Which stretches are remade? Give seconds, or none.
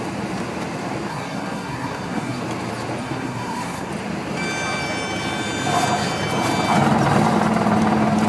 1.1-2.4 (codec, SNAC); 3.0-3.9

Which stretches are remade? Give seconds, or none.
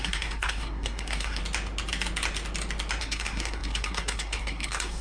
0.0-1.4 (codec, SNAC); 3.0-5.0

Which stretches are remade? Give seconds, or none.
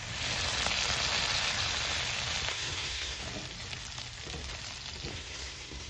2.5-3.2 (codec, SNAC); 5.1-5.9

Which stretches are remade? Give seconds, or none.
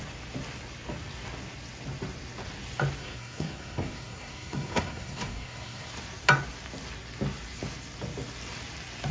3.0-5.9 (codec, SNAC)